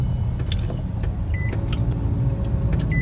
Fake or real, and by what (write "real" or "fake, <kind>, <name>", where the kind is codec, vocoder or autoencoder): real